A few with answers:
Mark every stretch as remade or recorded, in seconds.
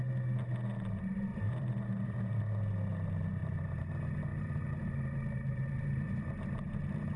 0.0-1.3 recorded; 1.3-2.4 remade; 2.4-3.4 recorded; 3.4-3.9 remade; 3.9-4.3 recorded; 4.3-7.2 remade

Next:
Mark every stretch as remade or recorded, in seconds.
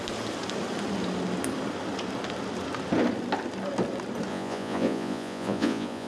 0.0-4.3 recorded; 4.3-6.1 remade